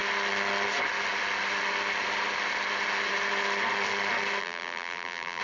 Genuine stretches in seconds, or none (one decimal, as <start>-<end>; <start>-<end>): 0.0-4.4